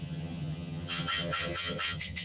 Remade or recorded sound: remade